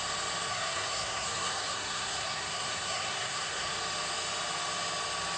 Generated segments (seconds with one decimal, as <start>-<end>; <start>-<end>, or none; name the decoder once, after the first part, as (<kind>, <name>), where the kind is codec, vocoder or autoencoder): 0.5-3.7 (codec, SNAC)